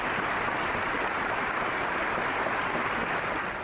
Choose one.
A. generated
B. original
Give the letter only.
B